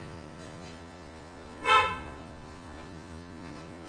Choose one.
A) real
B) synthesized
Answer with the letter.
B